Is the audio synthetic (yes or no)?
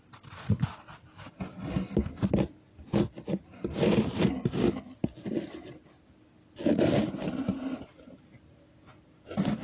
no